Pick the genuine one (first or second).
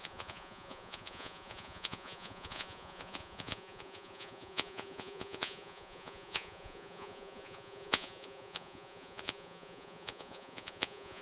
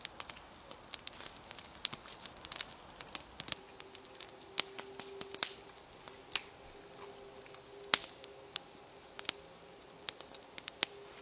second